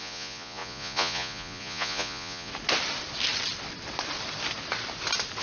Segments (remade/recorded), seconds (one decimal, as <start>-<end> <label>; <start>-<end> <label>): 0.0-2.5 remade; 2.5-5.4 recorded